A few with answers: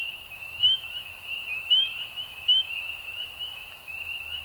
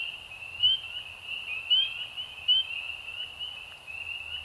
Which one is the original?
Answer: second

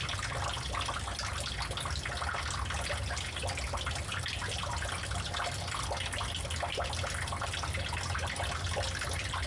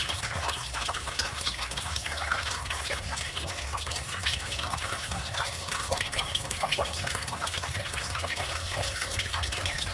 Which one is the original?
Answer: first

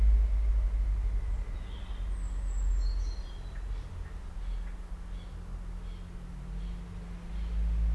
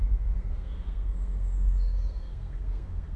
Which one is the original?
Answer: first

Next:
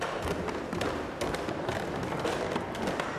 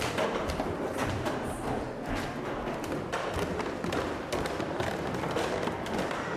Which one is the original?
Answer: first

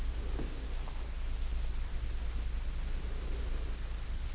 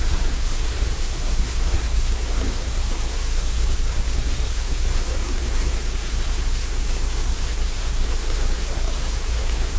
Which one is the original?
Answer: first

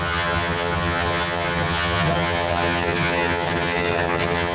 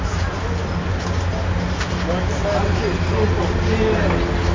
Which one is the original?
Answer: second